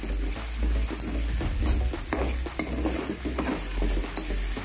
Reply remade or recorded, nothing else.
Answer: recorded